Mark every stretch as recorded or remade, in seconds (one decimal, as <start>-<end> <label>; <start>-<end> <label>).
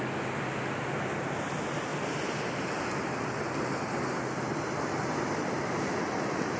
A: 0.0-6.6 recorded